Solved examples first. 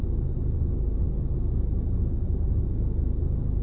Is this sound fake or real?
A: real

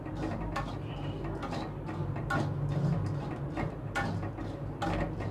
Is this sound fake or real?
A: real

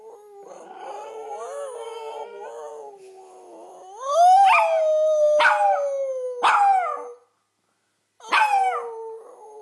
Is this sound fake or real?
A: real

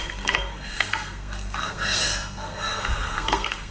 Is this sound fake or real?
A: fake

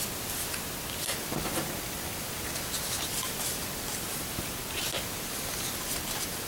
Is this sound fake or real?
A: real